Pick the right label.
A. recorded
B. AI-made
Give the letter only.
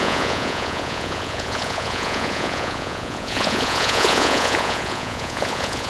B